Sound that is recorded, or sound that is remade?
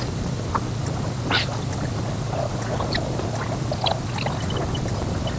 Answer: recorded